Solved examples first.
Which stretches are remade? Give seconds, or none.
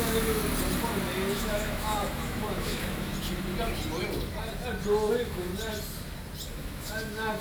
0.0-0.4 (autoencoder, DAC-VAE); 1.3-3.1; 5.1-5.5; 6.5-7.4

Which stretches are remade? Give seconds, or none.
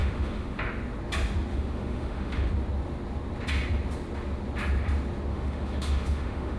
0.0-0.6 (autoencoder, DAC-VAE); 1.5-2.5; 5.3-6.6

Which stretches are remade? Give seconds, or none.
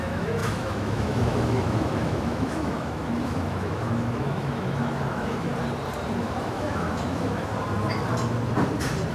0.0-5.5 (autoencoder, DAC-VAE); 6.2-7.5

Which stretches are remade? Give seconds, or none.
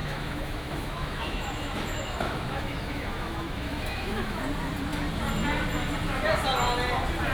0.0-4.4 (autoencoder, DAC-VAE)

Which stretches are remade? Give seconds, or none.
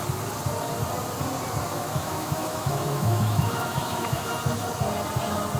1.7-4.3 (autoencoder, DAC-VAE)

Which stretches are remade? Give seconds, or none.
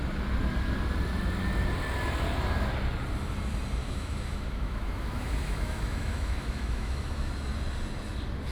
3.8-7.3 (autoencoder, DAC-VAE)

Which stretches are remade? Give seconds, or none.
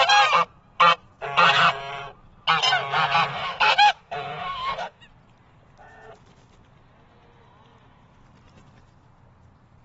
3.3-5.0 (autoencoder, DAC-VAE)